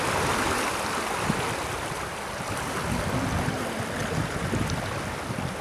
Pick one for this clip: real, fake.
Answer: real